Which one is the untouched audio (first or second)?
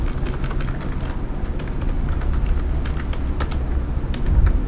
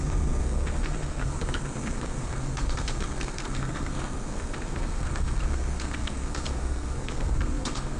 first